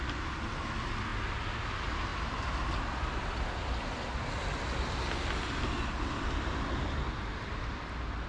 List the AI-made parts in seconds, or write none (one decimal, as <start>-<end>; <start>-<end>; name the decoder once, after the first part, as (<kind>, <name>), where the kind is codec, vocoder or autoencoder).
none